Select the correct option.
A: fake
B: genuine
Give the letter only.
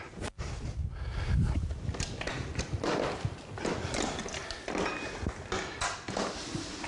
B